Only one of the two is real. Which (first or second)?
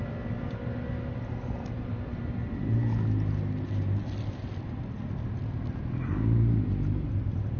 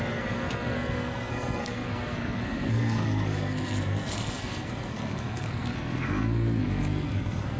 first